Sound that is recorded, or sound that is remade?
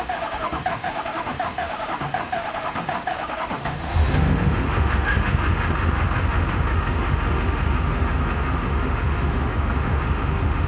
remade